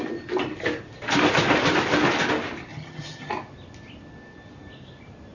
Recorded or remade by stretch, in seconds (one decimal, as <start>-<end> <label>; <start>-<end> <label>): 0.0-2.7 recorded; 2.7-3.3 remade; 3.3-5.3 recorded